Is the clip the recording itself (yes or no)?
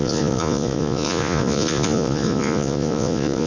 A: no